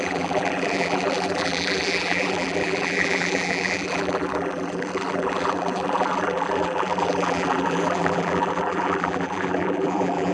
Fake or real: fake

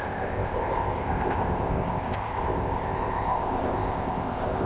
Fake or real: fake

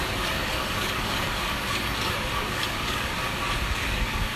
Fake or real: fake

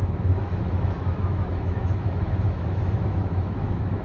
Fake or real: fake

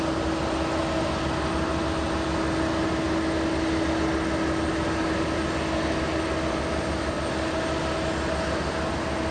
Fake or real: real